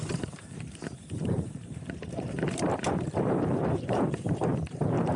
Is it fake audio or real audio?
fake